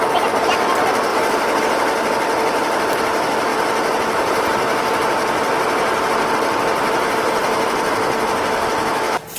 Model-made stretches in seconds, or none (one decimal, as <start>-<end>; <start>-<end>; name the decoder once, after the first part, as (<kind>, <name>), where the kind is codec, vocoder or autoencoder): 1.1-1.6 (vocoder, BigVGAN v2); 7.4-9.4